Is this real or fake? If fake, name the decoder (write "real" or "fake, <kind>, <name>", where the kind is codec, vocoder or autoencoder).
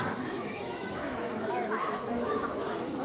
fake, autoencoder, DAC-VAE